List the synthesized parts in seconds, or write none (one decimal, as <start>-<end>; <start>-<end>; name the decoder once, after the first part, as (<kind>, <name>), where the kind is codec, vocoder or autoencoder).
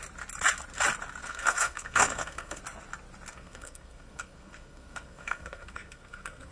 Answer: 1.2-2.6 (codec, SNAC); 3.3-6.5